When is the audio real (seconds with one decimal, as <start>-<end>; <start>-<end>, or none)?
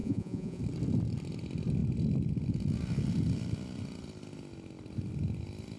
0.6-5.8